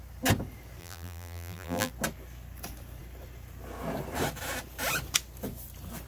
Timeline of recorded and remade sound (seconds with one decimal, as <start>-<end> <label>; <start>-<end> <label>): 0.0-0.8 recorded; 0.8-1.9 remade; 1.9-6.1 recorded